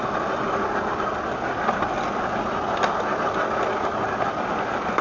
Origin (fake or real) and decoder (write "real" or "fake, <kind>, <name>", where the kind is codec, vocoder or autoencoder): real